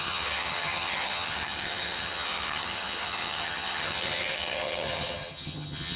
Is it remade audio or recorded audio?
remade